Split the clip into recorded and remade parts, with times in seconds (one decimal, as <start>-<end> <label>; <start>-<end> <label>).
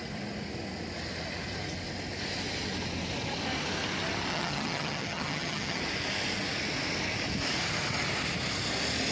0.0-4.3 recorded; 4.3-5.8 remade; 5.8-9.1 recorded